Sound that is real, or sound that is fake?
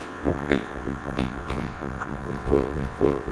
fake